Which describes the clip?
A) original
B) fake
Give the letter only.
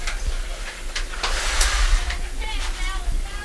A